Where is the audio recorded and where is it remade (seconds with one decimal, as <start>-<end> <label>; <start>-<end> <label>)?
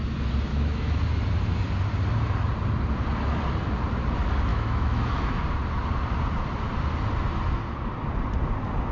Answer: 0.0-0.5 recorded; 0.5-1.0 remade; 1.0-4.5 recorded; 4.5-5.4 remade; 5.4-8.9 recorded